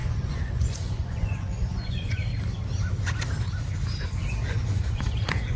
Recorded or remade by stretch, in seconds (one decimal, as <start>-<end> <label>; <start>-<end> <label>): 0.0-2.2 remade; 2.2-4.5 recorded; 4.5-5.6 remade